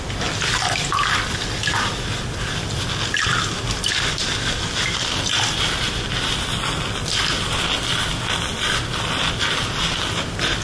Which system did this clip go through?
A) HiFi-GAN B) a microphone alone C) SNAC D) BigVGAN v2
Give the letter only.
B